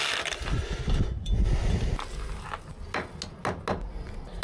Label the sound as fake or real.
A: real